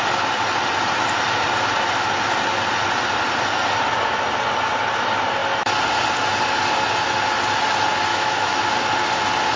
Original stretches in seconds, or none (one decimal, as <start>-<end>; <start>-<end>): 0.0-8.1; 8.6-9.6